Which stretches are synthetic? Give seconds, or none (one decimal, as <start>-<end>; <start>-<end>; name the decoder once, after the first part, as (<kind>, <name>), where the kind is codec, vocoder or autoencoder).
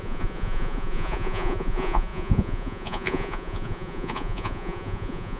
0.0-5.4 (vocoder, Vocos)